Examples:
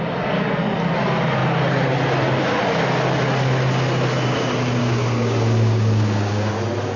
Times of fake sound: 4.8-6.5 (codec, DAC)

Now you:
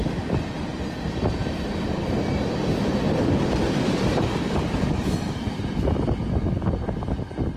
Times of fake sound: 1.4-5.8 (vocoder, BigVGAN v2)

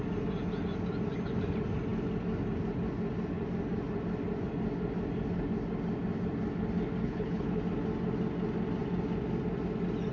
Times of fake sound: 7.0-7.6 (codec, HILCodec)

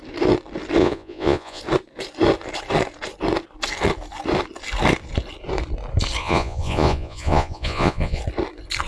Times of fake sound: 0.8-1.6 (vocoder, Vocos); 6.2-8.2